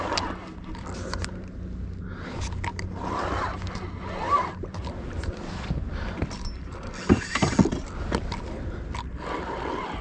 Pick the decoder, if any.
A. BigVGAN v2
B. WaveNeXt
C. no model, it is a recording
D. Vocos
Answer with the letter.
C